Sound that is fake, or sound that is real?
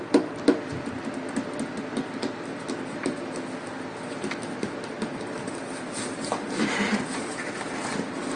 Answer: real